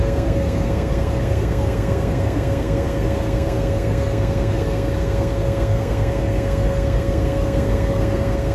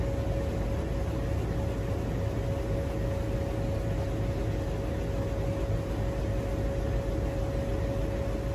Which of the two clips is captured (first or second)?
second